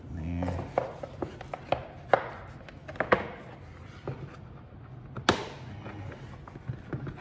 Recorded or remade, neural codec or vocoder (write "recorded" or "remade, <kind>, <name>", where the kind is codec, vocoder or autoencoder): recorded